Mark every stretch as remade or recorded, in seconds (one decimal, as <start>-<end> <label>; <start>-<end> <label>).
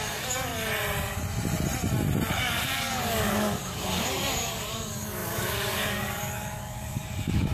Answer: 0.0-0.5 remade; 0.5-2.3 recorded; 2.3-7.5 remade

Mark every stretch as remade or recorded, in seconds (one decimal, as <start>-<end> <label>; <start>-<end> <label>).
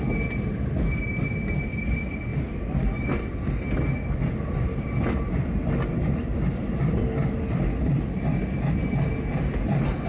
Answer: 0.0-10.1 recorded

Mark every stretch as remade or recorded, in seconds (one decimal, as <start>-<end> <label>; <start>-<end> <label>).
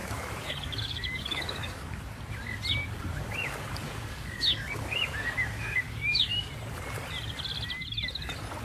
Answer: 0.0-2.2 remade; 2.2-2.8 recorded; 2.8-6.5 remade; 6.5-8.6 recorded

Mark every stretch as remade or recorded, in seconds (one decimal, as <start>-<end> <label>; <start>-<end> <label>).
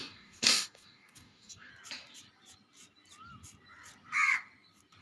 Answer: 0.0-1.7 remade; 1.7-5.0 recorded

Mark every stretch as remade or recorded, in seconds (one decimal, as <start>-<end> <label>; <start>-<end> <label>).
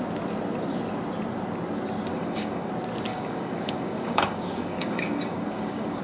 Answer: 0.0-2.1 recorded; 2.1-2.7 remade; 2.7-3.1 recorded; 3.1-6.0 remade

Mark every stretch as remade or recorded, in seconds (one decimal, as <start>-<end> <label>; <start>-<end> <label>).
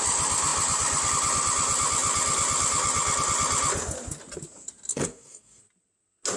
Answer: 0.0-4.9 recorded; 4.9-5.6 remade; 5.6-6.4 recorded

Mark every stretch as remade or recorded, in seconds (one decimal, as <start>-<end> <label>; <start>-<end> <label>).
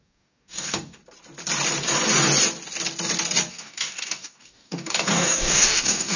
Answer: 0.0-1.0 remade; 1.0-3.5 recorded; 3.5-6.2 remade